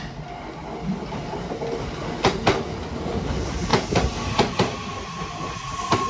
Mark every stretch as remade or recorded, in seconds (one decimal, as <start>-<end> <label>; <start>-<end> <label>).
0.0-6.1 recorded